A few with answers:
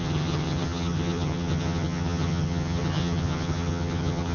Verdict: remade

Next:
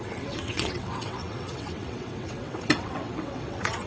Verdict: remade